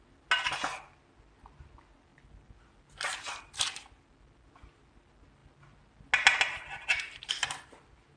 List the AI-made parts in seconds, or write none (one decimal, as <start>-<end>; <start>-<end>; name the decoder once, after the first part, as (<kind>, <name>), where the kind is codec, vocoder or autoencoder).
none